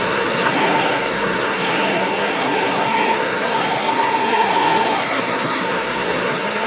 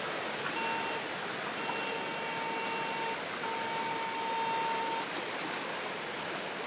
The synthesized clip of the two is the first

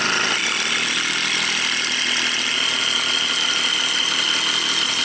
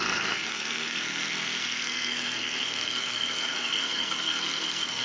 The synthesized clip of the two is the second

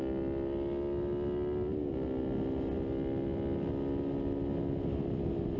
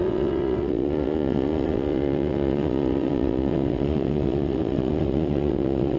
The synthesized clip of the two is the second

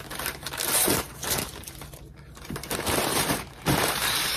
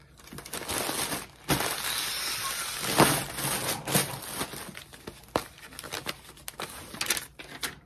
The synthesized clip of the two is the first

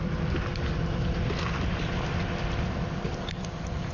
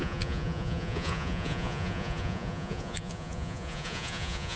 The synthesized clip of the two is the second